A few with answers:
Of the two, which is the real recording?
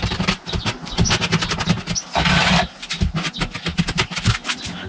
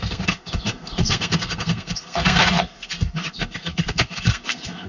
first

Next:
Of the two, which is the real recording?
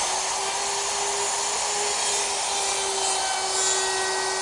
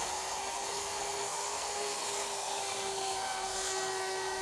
first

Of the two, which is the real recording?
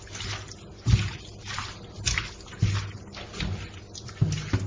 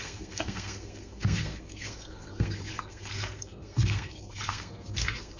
first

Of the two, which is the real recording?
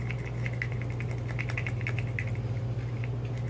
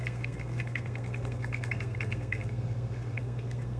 first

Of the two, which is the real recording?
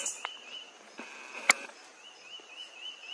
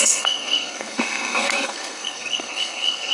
first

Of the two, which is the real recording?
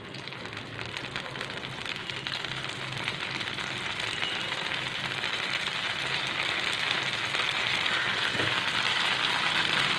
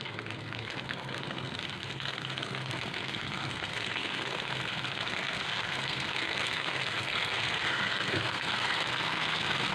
first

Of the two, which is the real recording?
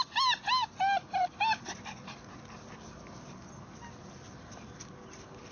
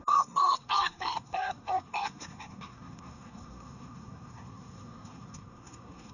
first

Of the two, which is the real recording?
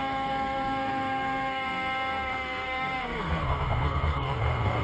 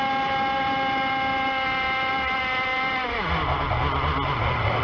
second